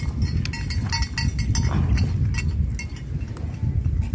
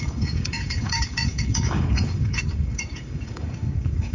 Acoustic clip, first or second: first